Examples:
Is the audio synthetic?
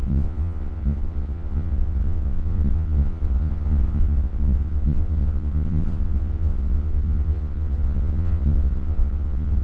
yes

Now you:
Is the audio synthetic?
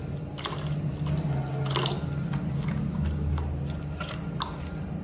no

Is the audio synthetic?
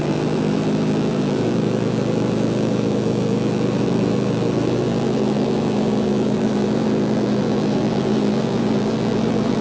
yes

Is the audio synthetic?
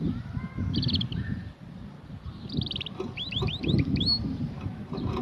no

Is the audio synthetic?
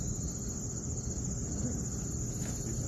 no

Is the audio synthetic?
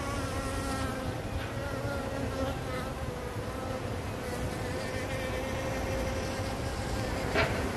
no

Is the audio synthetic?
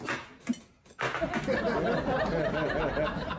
no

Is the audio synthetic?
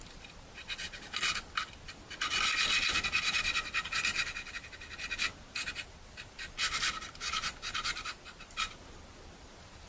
no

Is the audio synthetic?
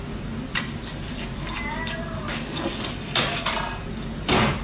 no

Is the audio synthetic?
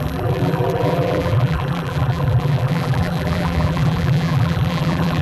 yes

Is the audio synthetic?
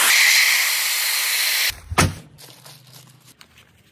no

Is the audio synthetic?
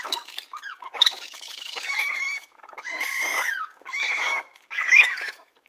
yes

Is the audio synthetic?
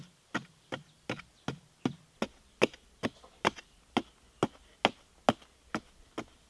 no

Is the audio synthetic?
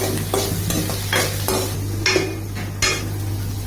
no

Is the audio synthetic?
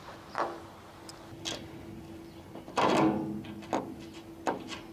no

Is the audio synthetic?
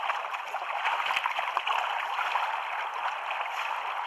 no